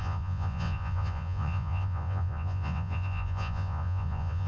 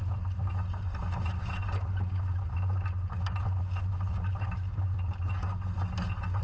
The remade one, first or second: first